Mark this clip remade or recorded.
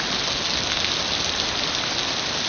recorded